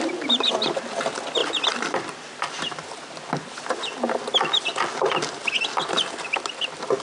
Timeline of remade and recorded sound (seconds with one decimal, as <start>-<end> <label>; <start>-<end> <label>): 0.0-7.0 recorded